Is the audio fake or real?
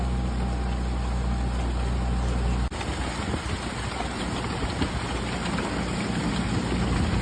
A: real